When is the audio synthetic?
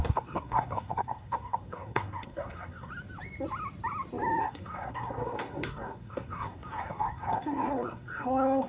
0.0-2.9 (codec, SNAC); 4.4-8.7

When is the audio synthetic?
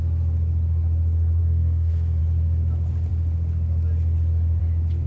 1.4-2.2 (codec, SNAC)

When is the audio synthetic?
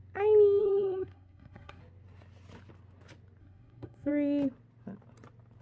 0.6-1.8 (codec, SNAC); 3.4-4.1